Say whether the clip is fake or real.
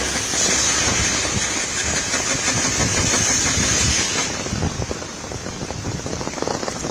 real